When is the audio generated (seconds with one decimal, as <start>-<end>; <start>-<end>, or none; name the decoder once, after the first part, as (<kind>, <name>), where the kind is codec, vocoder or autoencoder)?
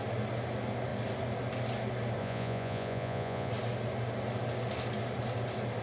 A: 2.2-3.5 (vocoder, Vocos)